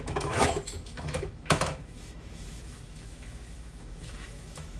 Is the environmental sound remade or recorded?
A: remade